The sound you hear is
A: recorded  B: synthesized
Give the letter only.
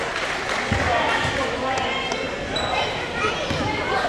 A